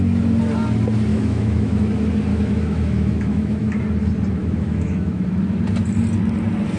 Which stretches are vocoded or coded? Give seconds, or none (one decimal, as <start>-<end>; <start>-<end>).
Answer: 1.1-1.8; 2.3-3.8; 4.4-5.2